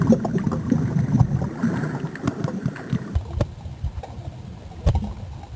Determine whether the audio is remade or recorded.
recorded